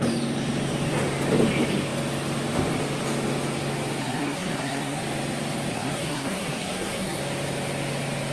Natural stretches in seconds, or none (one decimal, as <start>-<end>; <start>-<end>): 0.0-4.0; 5.0-5.7; 7.2-8.3